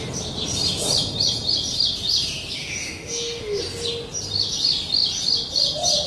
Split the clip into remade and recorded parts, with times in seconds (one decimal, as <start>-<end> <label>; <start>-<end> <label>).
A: 0.0-2.6 recorded; 2.6-3.6 remade; 3.6-6.1 recorded